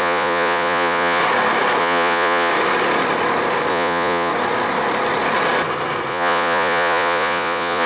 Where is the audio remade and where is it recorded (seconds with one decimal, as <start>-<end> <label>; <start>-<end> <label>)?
0.0-1.2 remade; 1.2-1.8 recorded; 1.8-2.5 remade; 2.5-3.7 recorded; 3.7-4.3 remade; 4.3-6.1 recorded; 6.1-7.9 remade

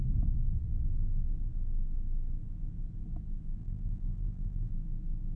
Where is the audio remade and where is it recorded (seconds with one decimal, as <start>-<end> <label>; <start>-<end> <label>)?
0.0-3.6 recorded; 3.6-4.7 remade; 4.7-5.4 recorded